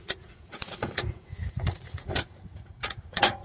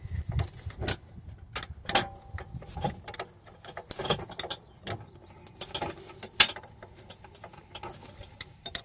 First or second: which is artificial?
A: first